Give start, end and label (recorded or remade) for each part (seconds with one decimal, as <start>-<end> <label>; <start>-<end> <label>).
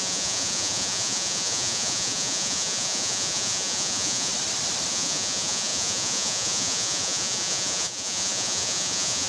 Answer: 0.0-4.3 remade; 4.3-4.9 recorded; 4.9-9.3 remade